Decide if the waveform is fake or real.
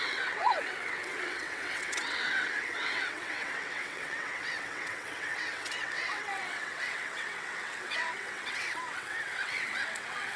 fake